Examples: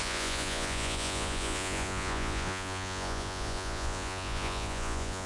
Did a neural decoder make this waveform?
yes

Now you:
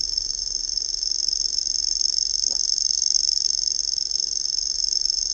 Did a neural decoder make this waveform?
yes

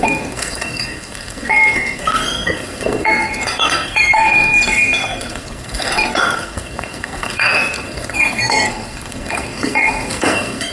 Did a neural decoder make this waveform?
yes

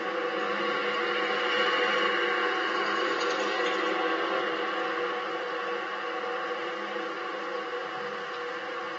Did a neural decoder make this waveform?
no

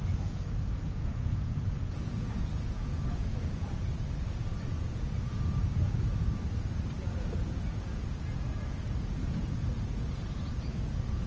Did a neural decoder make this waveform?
yes